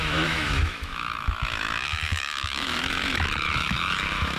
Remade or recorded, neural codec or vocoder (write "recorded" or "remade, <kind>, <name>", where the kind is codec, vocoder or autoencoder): remade, autoencoder, DAC-VAE